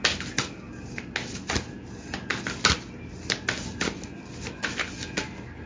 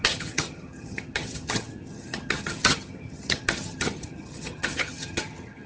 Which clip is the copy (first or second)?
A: second